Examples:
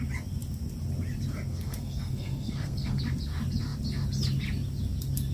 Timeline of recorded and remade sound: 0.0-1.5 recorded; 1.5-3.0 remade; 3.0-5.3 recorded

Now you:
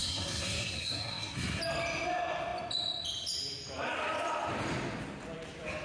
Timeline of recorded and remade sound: 0.0-1.6 remade; 1.6-5.8 recorded

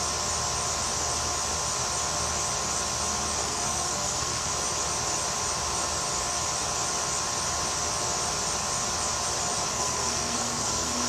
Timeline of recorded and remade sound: 0.0-3.4 recorded; 3.4-4.5 remade; 4.5-9.7 recorded; 9.7-11.1 remade

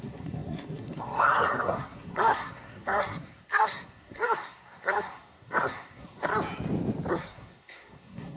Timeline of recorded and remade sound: 0.0-6.3 remade; 6.3-7.1 recorded; 7.1-8.4 remade

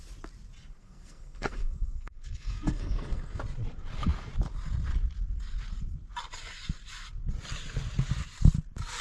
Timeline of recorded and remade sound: 0.0-0.8 recorded; 0.8-3.4 remade; 3.4-9.0 recorded

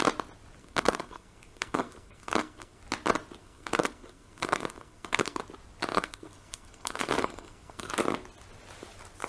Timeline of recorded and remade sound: 0.0-0.6 recorded; 0.6-2.8 remade; 2.8-3.4 recorded; 3.4-5.4 remade; 5.4-5.9 recorded; 5.9-7.9 remade; 7.9-9.3 recorded